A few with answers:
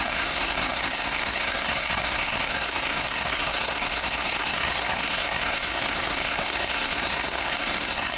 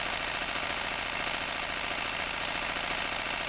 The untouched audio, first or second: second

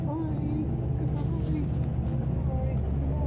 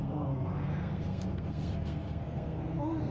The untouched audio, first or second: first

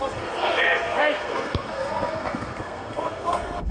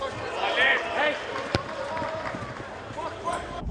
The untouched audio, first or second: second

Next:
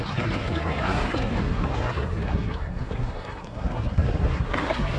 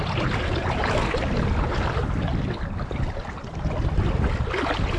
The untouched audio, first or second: second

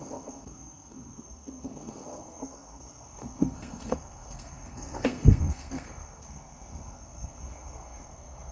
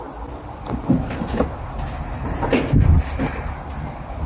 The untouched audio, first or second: second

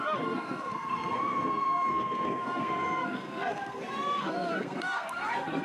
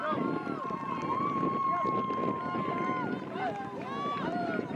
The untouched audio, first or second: second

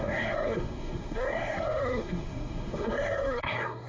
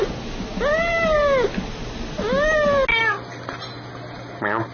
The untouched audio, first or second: second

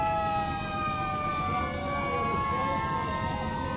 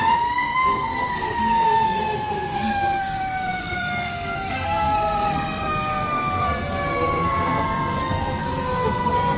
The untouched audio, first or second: first